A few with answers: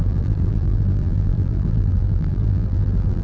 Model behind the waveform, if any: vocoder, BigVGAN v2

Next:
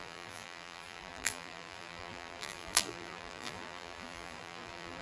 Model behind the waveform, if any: vocoder, BigVGAN v2